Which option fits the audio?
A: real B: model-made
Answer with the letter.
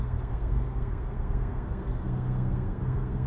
B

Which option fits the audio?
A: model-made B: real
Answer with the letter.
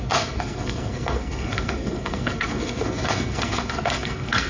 A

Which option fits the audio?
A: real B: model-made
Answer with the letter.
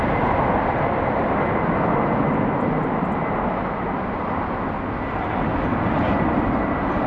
A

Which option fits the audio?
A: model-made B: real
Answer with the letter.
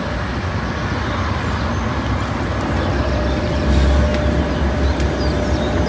B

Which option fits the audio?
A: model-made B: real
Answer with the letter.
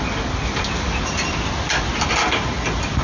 B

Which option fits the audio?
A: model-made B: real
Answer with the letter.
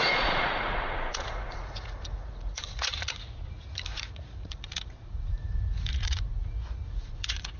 A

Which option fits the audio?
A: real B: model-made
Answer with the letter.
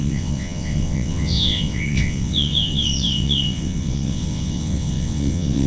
B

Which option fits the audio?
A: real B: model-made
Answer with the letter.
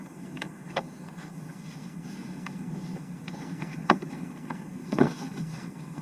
B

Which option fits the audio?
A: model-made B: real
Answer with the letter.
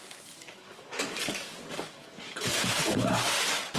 A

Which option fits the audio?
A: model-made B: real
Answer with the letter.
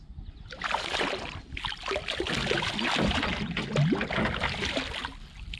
B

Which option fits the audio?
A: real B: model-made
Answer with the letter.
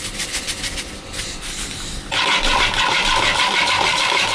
B